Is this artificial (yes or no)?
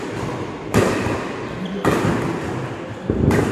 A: no